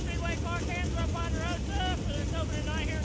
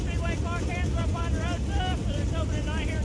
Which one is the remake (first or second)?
second